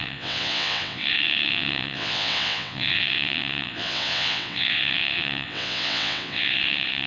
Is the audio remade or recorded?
remade